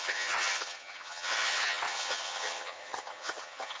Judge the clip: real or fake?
fake